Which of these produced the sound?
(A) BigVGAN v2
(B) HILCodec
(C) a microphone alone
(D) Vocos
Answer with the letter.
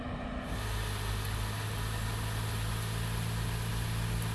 C